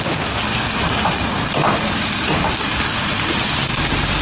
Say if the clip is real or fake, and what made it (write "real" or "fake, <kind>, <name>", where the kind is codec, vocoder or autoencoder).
real